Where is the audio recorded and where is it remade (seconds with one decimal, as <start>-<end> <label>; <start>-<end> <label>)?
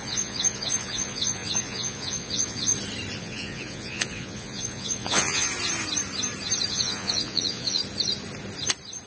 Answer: 0.0-2.7 remade; 2.7-3.2 recorded; 3.2-5.5 remade; 5.5-6.7 recorded; 6.7-7.8 remade; 7.8-9.1 recorded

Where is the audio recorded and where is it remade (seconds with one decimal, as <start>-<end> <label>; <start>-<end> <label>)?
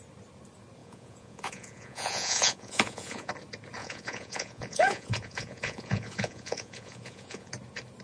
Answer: 0.0-0.8 recorded; 0.8-3.3 remade; 3.3-3.8 recorded; 3.8-7.5 remade; 7.5-8.0 recorded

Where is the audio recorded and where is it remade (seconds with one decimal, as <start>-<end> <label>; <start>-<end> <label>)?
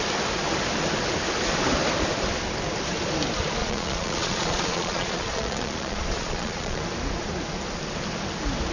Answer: 0.0-3.6 recorded; 3.6-6.8 remade; 6.8-8.7 recorded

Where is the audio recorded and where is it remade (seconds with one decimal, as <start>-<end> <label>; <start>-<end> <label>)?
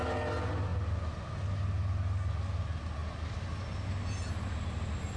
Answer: 0.0-5.2 recorded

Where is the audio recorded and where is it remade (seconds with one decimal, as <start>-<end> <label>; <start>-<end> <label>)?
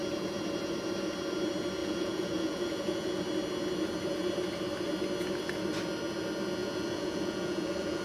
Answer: 0.0-1.8 recorded; 1.8-3.2 remade; 3.2-6.6 recorded; 6.6-8.0 remade